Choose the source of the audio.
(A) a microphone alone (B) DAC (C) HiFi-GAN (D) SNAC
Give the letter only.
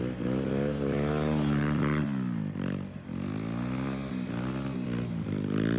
A